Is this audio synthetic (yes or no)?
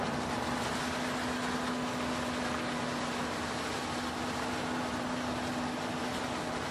no